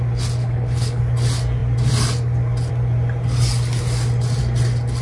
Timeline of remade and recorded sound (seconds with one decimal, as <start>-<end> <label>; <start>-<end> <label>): 0.0-0.4 recorded; 0.4-1.0 remade; 1.0-5.0 recorded